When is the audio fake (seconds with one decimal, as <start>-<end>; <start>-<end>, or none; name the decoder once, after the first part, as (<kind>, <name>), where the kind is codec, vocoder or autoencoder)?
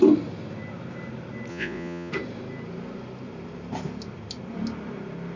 1.5-2.1 (vocoder, Vocos)